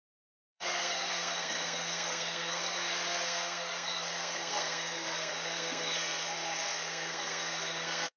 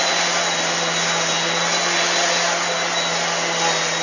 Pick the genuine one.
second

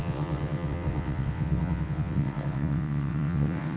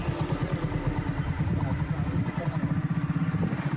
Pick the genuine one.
second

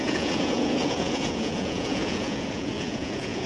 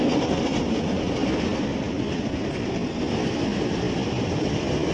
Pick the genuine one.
second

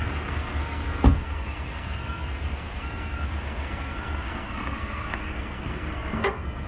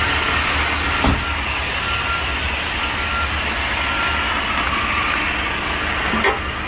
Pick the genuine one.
second